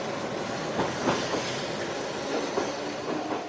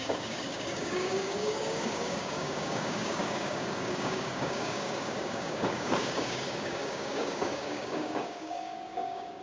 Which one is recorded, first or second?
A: first